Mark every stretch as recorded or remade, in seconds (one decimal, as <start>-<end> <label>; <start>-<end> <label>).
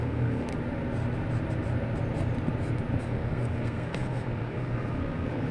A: 0.0-0.5 remade; 0.5-3.0 recorded; 3.0-5.5 remade